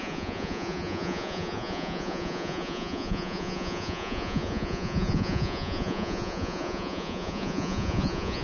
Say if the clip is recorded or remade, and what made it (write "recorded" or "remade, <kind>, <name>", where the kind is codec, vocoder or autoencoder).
remade, vocoder, Vocos